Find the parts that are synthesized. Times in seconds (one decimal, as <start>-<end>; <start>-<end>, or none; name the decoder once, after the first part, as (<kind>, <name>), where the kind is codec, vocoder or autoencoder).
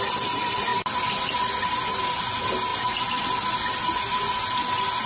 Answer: none